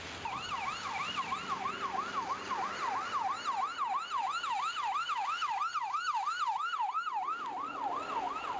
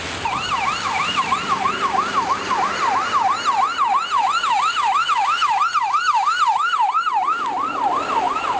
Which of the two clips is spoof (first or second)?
second